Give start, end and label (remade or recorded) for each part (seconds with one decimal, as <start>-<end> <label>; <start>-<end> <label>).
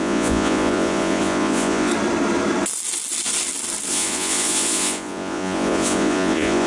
0.0-1.9 remade; 1.9-3.9 recorded; 3.9-6.7 remade